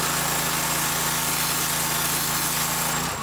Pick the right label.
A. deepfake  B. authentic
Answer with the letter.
B